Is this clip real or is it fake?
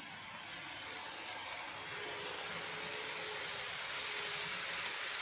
real